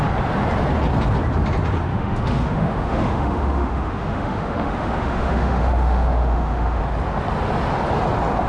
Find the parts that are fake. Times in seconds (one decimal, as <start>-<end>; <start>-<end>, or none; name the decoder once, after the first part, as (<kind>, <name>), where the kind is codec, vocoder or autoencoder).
1.9-6.8 (autoencoder, DAC-VAE)